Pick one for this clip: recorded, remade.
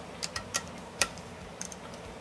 remade